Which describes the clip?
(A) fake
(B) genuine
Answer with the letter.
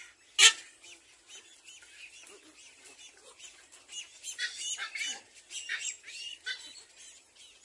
B